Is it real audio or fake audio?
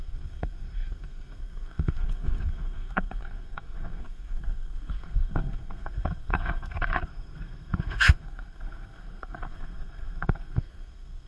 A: fake